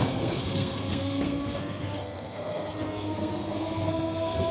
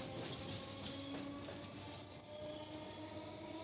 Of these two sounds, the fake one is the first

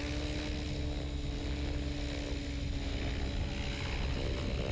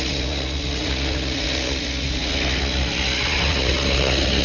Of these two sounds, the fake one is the second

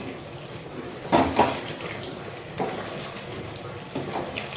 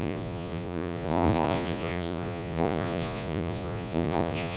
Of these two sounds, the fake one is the second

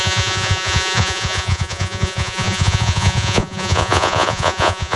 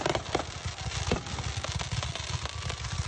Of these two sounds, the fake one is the first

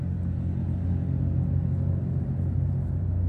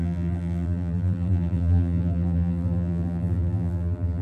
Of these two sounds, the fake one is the second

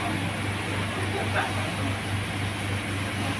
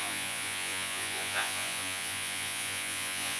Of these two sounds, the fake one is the second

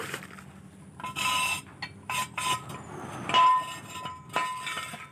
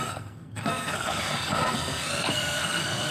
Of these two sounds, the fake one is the second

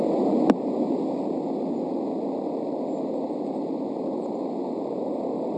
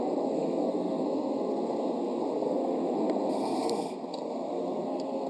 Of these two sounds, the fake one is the second